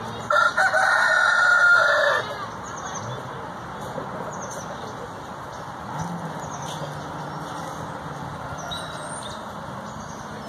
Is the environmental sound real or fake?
real